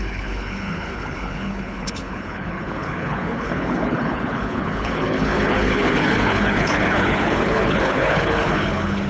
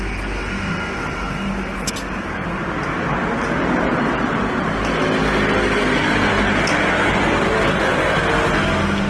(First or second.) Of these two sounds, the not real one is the first